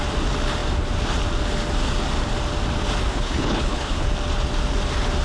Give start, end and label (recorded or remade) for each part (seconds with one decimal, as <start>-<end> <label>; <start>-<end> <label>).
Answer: 0.0-3.1 recorded; 3.1-4.0 remade; 4.0-5.2 recorded